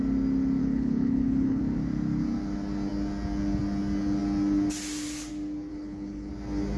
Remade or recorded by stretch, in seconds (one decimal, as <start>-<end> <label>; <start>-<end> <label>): 0.0-0.6 recorded; 0.6-1.6 remade; 1.6-5.7 recorded; 5.7-6.3 remade; 6.3-6.8 recorded